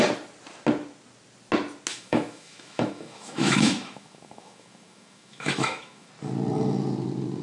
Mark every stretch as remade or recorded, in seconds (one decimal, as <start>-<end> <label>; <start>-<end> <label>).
0.0-1.9 recorded; 1.9-6.1 remade; 6.1-7.4 recorded